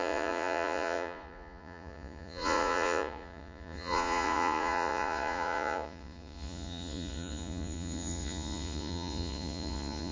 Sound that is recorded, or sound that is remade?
remade